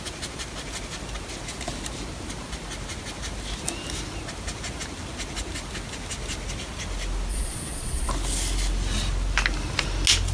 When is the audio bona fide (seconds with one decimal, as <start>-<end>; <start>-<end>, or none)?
0.0-7.3; 8.1-10.3